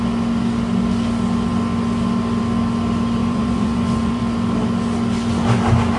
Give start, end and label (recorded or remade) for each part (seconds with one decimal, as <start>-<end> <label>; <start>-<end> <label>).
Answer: 0.0-3.2 recorded; 3.2-4.2 remade; 4.2-6.0 recorded